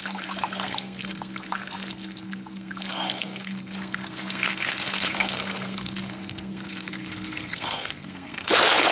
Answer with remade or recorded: remade